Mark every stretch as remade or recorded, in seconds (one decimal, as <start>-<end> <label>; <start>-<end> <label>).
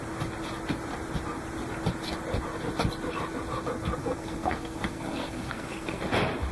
0.0-4.0 recorded; 4.0-6.0 remade; 6.0-6.5 recorded